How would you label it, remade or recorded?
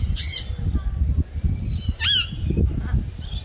recorded